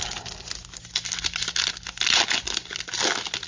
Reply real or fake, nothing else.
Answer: real